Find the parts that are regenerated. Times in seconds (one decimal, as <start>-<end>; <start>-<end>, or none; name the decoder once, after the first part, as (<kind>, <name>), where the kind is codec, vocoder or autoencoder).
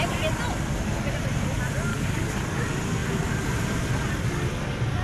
1.9-2.6 (codec, DAC)